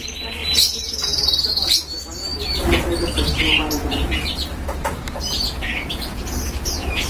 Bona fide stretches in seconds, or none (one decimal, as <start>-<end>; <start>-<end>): 5.7-6.5